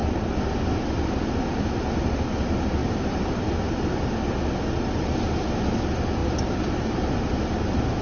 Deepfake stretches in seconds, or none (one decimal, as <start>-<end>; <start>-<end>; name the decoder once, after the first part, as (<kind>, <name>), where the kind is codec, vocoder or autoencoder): 2.8-3.7 (vocoder, BigVGAN v2); 6.2-7.2